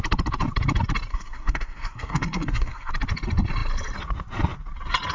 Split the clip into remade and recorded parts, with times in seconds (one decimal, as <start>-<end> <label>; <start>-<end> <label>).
0.0-1.1 recorded; 1.1-2.9 remade; 2.9-5.1 recorded